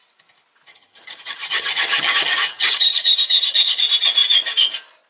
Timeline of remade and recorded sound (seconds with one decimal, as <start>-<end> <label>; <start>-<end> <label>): 0.0-0.7 recorded; 0.7-3.8 remade; 3.8-5.1 recorded